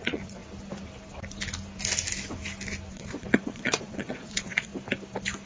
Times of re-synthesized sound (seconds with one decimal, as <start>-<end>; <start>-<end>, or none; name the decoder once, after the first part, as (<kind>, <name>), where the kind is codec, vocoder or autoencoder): 0.0-0.4 (vocoder, Vocos); 2.9-4.7